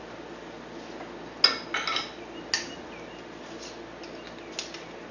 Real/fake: real